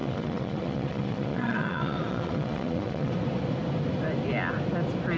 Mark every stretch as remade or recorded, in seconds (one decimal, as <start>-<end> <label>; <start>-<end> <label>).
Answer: 0.0-3.1 remade; 3.1-5.2 recorded